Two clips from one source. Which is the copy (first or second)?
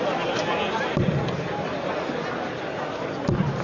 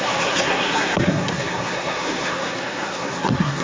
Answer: second